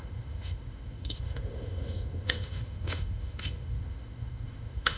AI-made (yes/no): yes